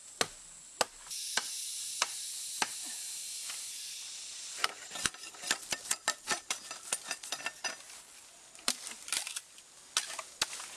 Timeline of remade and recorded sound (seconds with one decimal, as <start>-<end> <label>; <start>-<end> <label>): 0.0-10.8 recorded